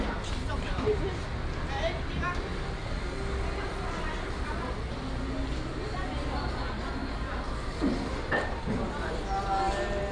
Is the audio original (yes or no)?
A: yes